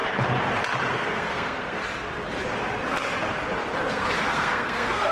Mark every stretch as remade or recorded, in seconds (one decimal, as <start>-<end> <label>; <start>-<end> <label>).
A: 0.0-0.9 recorded; 0.9-1.8 remade; 1.8-3.9 recorded; 3.9-5.1 remade